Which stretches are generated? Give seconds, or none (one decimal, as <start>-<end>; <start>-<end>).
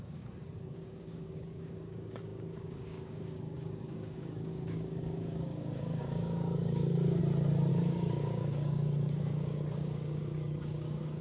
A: 0.0-7.2; 7.7-11.2